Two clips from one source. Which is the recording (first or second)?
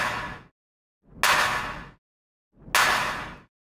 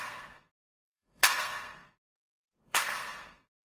first